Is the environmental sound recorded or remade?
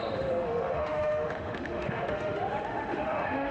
remade